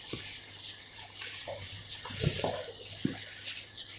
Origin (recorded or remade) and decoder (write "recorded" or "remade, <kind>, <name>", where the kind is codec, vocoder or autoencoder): recorded